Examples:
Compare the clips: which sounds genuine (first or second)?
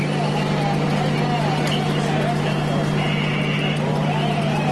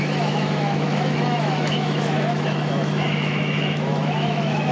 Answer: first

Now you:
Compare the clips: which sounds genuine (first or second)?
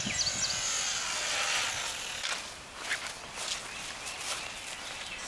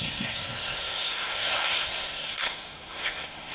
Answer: first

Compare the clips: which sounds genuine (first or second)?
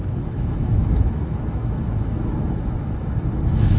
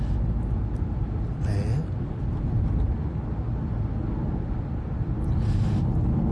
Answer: second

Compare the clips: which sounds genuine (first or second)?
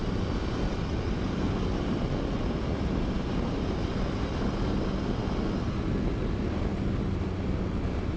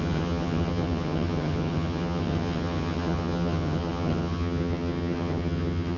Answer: first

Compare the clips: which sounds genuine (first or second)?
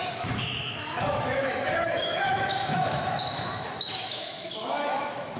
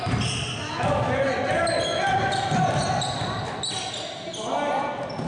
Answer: second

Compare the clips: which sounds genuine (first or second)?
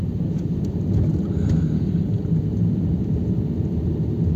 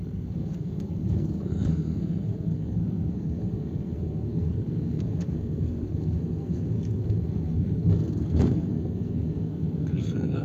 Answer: first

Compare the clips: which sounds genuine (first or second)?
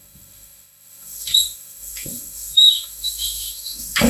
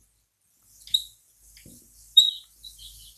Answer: second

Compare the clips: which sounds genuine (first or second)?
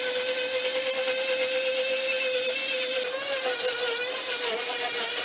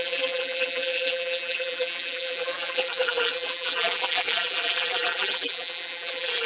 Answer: first